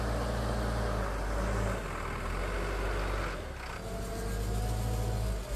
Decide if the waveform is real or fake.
real